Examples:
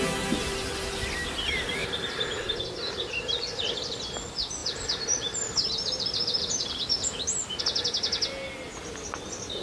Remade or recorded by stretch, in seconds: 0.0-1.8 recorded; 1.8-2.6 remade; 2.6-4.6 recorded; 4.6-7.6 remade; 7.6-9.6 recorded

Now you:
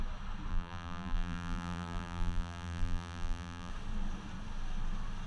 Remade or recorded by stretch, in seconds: 0.0-0.5 recorded; 0.5-3.7 remade; 3.7-5.3 recorded

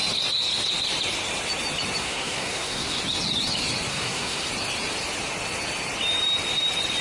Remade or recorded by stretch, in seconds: 0.0-2.0 recorded; 2.0-3.0 remade; 3.0-3.9 recorded; 3.9-4.5 remade; 4.5-7.0 recorded

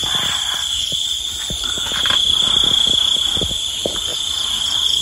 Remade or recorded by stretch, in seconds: 0.0-4.1 recorded; 4.1-5.0 remade

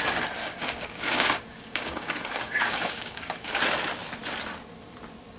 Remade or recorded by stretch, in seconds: 0.0-0.4 recorded; 0.4-3.6 remade; 3.6-5.4 recorded

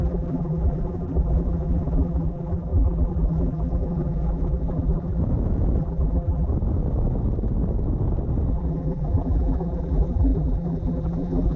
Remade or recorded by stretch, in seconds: 0.0-5.2 remade; 5.2-5.8 recorded; 5.8-6.5 remade; 6.5-8.5 recorded; 8.5-11.6 remade